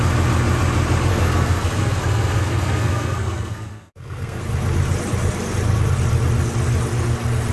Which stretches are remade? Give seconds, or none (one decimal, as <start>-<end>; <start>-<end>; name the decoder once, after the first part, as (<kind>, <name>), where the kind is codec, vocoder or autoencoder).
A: 1.1-4.4 (codec, SNAC)